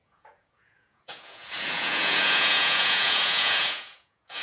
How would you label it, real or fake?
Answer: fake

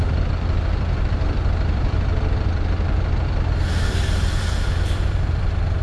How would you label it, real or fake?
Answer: fake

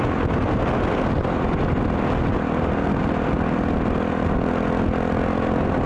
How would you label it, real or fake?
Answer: real